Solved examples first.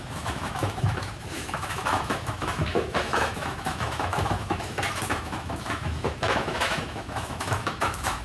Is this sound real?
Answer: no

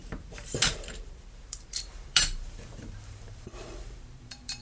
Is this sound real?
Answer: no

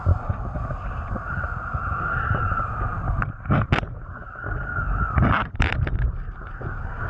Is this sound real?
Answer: yes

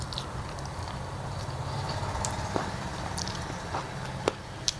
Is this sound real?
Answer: no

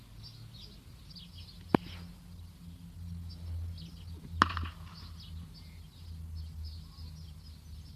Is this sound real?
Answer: yes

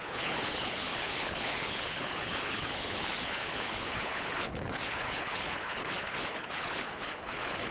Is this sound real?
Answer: no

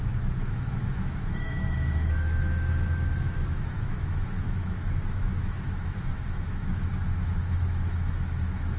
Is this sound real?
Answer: no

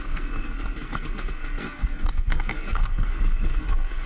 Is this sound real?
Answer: no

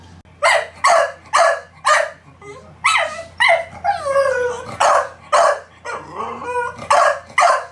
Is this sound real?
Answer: yes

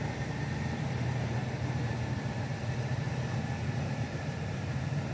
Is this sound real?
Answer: no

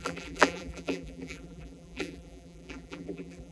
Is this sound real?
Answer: no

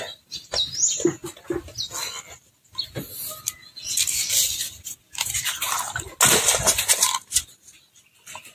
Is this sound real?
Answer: yes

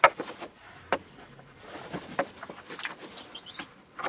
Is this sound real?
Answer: yes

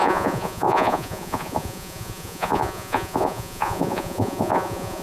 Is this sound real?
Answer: no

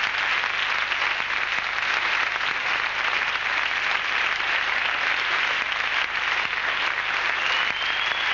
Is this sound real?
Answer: yes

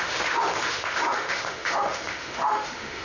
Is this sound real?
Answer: no